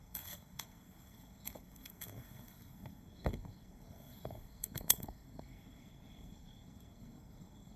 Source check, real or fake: fake